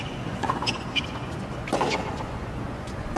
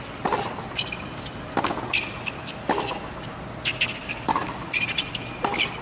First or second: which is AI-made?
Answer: first